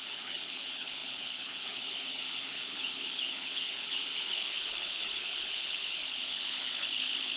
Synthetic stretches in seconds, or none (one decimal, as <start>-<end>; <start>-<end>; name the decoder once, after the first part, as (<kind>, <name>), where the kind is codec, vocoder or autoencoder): 0.0-7.4 (codec, HILCodec)